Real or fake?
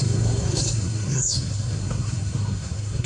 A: fake